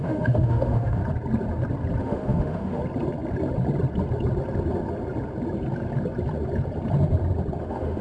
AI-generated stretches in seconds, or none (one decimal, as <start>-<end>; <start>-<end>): 0.0-1.0; 2.0-2.8; 7.6-8.0